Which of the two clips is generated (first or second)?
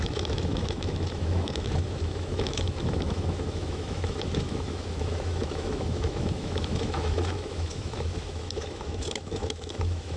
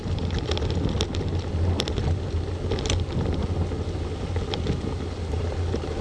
first